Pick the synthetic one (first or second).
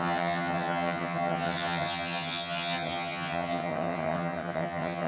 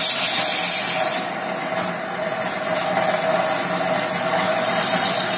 first